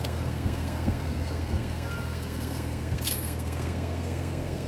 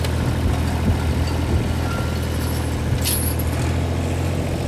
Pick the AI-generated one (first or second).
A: first